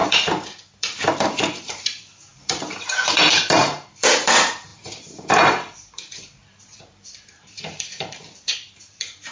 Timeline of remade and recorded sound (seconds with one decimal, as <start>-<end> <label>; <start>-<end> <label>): 0.0-9.3 remade